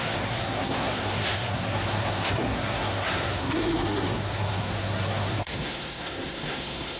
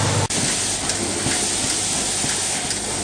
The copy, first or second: first